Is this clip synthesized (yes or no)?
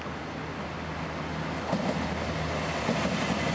no